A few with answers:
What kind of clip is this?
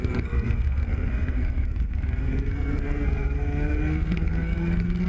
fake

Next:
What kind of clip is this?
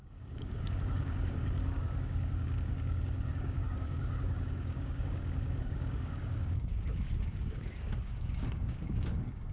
fake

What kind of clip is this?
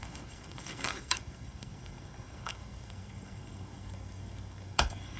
fake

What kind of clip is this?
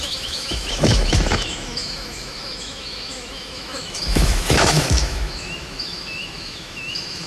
fake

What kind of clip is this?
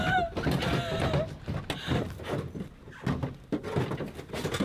real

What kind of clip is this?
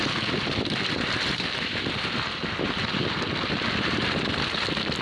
real